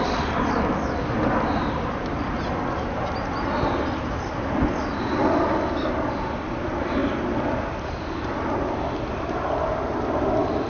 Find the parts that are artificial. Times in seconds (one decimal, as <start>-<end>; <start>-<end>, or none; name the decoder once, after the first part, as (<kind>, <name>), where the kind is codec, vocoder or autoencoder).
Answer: none